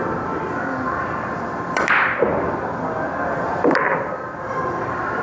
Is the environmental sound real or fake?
fake